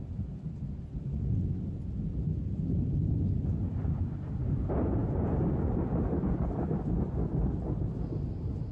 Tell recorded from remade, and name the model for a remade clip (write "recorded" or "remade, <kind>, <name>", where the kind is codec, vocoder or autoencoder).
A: recorded